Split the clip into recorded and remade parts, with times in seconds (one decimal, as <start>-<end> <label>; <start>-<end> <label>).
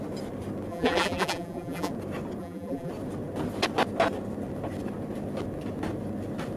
0.0-0.7 recorded; 0.7-1.9 remade; 1.9-2.4 recorded; 2.4-2.9 remade; 2.9-6.6 recorded